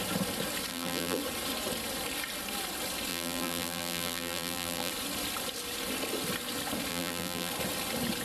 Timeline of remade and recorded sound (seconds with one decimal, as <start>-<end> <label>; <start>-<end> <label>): 0.0-0.7 recorded; 0.7-1.2 remade; 1.2-3.1 recorded; 3.1-4.9 remade; 4.9-6.9 recorded; 6.9-7.5 remade; 7.5-8.2 recorded